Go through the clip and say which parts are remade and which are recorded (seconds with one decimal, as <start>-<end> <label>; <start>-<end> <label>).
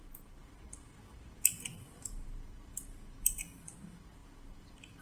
0.0-5.0 remade